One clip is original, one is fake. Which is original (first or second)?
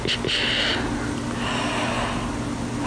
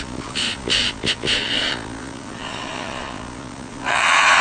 first